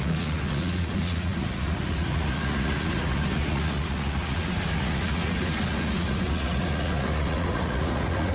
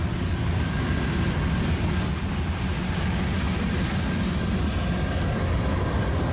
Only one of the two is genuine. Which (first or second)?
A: second